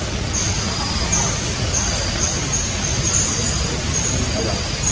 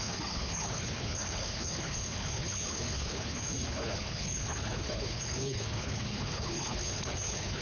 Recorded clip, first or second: first